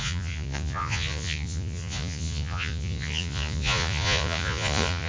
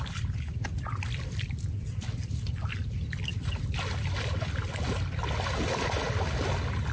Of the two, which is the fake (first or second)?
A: first